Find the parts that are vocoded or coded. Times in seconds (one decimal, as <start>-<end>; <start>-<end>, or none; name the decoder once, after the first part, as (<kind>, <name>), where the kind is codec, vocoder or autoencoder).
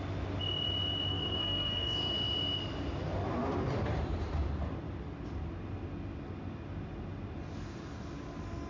1.1-2.1 (codec, SNAC)